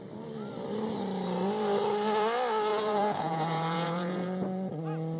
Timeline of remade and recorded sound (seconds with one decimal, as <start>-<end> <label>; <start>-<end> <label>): 0.0-2.7 recorded; 2.7-4.7 remade; 4.7-5.2 recorded